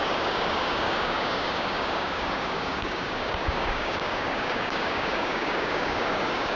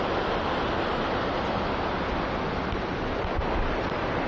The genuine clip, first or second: second